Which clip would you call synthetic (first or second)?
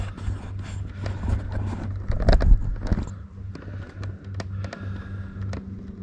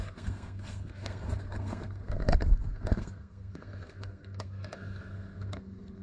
second